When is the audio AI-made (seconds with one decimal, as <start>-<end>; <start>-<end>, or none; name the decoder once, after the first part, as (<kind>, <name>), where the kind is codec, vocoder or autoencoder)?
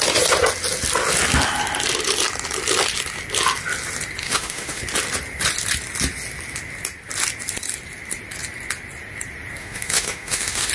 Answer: 4.2-4.8 (autoencoder, DAC-VAE); 9.6-10.7